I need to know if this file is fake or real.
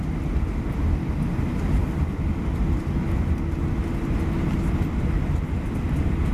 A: real